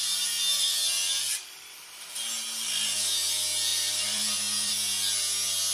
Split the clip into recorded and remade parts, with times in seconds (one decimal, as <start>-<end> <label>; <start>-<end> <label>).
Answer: 0.0-3.7 recorded; 3.7-4.7 remade; 4.7-5.7 recorded